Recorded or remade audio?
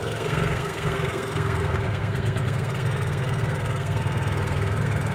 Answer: remade